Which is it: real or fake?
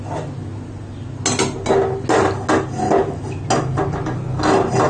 real